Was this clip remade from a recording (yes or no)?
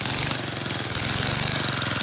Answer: no